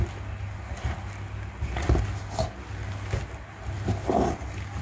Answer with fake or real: real